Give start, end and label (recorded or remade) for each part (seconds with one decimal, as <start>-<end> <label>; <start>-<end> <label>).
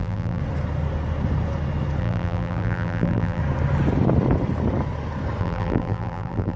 0.0-0.4 remade; 0.4-2.0 recorded; 2.0-3.4 remade; 3.4-5.4 recorded; 5.4-6.6 remade